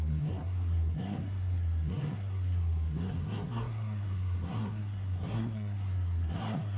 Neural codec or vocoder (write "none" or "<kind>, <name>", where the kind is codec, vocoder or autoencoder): codec, SNAC